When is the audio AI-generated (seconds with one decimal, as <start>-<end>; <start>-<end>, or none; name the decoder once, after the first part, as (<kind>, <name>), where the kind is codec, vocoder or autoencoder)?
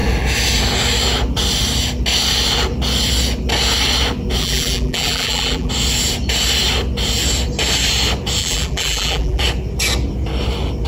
4.4-5.7 (vocoder, BigVGAN v2); 8.4-9.4